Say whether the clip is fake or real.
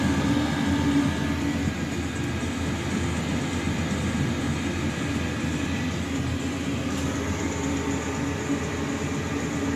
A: real